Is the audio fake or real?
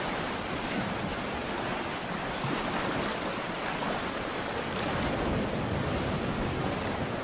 real